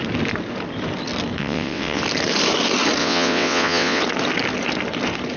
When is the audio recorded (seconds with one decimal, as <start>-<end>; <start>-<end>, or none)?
0.0-1.4; 2.0-3.0; 4.0-5.4